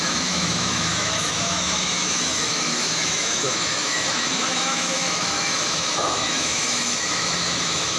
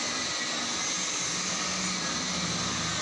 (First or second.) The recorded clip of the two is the second